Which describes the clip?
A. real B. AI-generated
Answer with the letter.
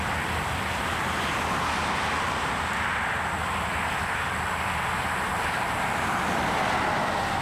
A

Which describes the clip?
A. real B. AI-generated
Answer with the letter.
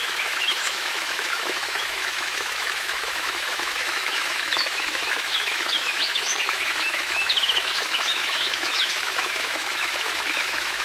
B